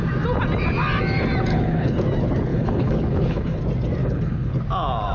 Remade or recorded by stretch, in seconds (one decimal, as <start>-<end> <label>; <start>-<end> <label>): 0.0-1.5 recorded; 1.5-2.0 remade; 2.0-2.5 recorded; 2.5-3.6 remade; 3.6-4.0 recorded; 4.0-4.6 remade; 4.6-5.1 recorded